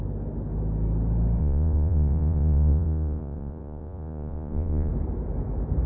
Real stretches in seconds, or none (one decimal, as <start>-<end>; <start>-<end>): 0.0-1.4; 4.9-5.9